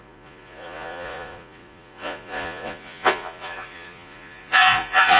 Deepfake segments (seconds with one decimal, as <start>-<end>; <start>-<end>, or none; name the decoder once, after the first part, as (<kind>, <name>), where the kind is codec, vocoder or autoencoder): 0.0-5.2 (vocoder, Vocos)